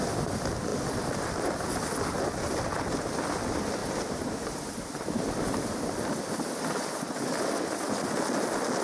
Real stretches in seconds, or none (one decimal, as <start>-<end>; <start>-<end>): 0.0-3.8; 6.1-8.8